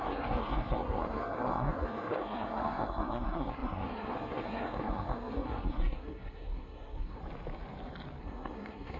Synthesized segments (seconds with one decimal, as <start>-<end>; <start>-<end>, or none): 0.0-7.2; 8.2-9.0